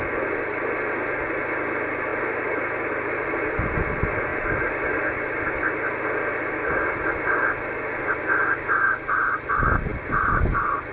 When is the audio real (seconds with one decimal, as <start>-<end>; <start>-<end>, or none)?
0.0-2.1; 3.5-9.9